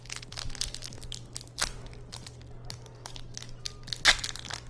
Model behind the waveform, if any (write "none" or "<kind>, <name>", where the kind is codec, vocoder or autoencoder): none